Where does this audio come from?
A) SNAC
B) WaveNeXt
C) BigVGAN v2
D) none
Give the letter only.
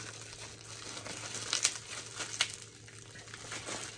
D